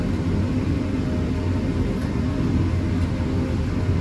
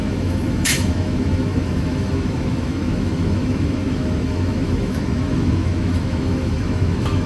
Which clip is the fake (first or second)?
second